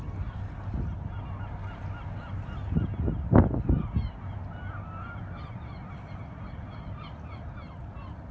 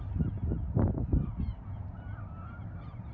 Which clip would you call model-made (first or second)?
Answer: second